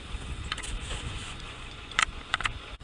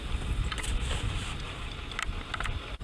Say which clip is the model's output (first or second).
first